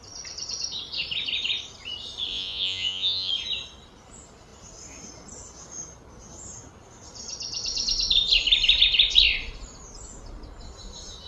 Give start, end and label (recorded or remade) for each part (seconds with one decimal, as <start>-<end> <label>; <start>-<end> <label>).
0.0-2.3 recorded; 2.3-3.3 remade; 3.3-11.3 recorded